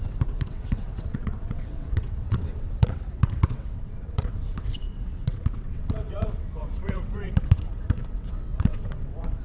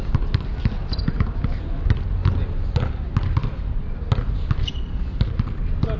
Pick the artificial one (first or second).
first